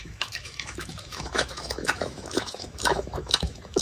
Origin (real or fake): fake